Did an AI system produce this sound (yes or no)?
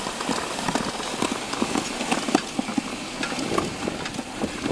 no